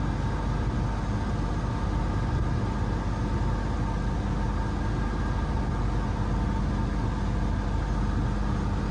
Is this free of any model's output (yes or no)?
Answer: yes